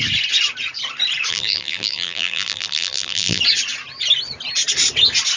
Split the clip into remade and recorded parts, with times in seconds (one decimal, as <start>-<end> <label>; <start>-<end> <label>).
0.0-1.3 recorded; 1.3-3.4 remade; 3.4-5.4 recorded